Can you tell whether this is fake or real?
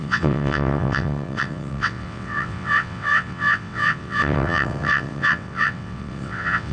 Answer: fake